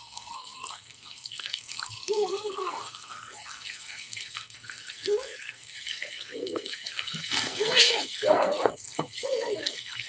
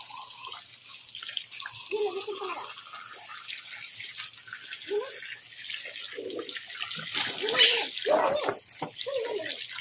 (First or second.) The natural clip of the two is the second